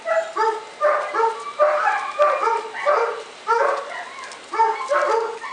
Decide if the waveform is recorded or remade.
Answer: recorded